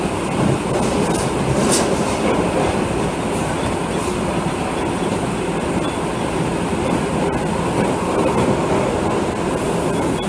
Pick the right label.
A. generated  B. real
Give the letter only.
B